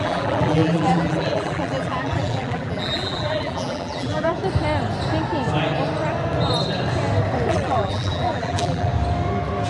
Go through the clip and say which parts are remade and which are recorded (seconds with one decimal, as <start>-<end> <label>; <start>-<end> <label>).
0.0-4.3 remade; 4.3-7.5 recorded; 7.5-8.9 remade; 8.9-9.7 recorded